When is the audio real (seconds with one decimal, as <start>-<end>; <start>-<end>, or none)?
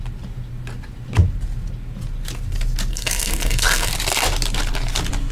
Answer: 0.0-2.9; 3.9-5.3